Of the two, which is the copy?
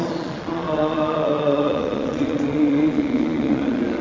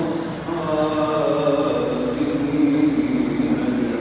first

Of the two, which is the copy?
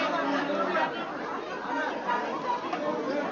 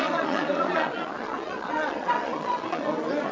second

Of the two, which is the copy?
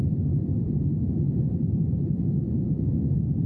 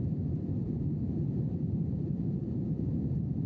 second